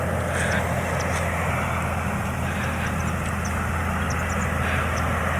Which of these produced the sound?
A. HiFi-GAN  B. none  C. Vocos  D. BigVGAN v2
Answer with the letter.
B